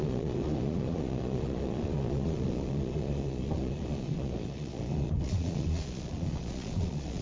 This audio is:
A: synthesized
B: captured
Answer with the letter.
A